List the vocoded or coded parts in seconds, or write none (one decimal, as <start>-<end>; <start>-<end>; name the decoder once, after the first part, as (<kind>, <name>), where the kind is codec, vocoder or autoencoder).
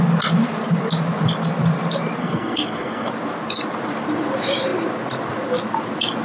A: 2.2-3.1 (codec, SNAC)